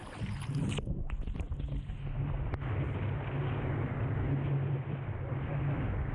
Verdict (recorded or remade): recorded